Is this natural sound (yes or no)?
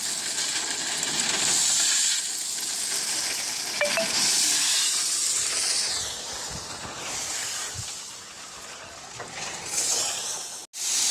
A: yes